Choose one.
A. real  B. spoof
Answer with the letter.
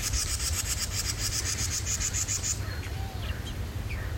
B